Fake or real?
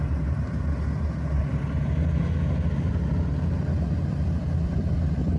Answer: real